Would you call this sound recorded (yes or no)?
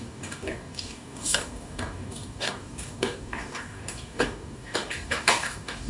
no